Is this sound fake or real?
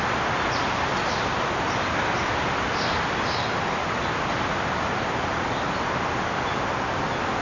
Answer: real